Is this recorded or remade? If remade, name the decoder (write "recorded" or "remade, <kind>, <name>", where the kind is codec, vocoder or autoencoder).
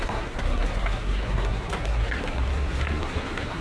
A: remade, codec, SNAC